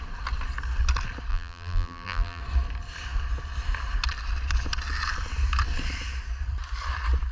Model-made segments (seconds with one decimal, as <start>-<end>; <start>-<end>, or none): 1.3-2.4